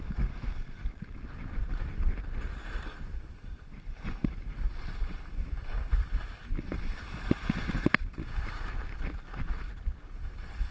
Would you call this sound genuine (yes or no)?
no